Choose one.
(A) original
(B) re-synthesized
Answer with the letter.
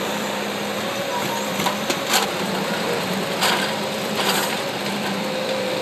B